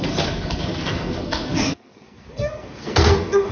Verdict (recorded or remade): remade